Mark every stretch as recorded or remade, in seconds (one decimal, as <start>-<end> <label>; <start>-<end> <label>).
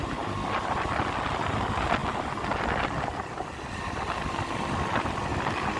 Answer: 0.0-5.8 recorded